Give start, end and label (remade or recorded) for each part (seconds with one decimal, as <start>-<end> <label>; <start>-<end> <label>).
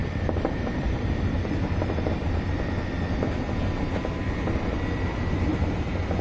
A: 0.0-2.7 remade; 2.7-6.2 recorded